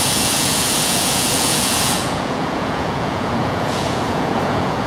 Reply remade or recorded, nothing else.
remade